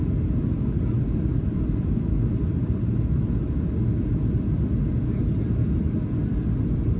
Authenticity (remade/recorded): recorded